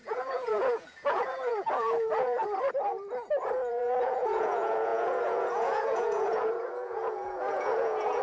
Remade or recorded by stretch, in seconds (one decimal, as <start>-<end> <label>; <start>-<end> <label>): 0.0-2.4 remade; 2.4-3.7 recorded; 3.7-8.2 remade